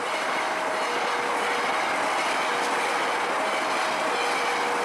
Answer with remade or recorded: recorded